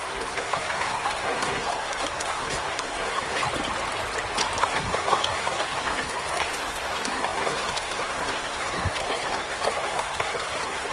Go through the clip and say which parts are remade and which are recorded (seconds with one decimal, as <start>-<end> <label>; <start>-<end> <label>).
0.0-3.4 remade; 3.4-4.6 recorded; 4.6-10.9 remade